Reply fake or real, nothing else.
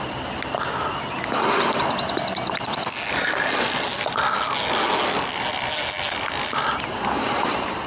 real